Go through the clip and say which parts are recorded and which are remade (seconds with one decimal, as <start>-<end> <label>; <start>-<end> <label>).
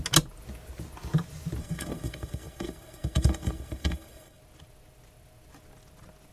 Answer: 0.0-1.6 recorded; 1.6-4.4 remade; 4.4-6.3 recorded